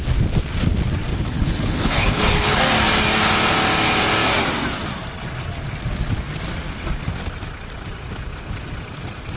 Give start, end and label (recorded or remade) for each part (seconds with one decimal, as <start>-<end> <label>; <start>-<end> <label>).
0.0-1.1 recorded; 1.1-2.6 remade; 2.6-9.4 recorded